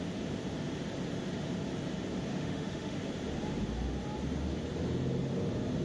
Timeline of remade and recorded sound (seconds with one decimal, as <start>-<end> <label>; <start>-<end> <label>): 0.0-2.3 recorded; 2.3-3.0 remade; 3.0-5.8 recorded